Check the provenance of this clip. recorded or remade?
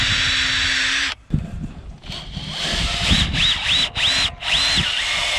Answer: recorded